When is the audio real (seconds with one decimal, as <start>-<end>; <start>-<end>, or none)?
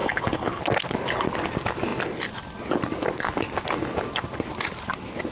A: 0.6-5.3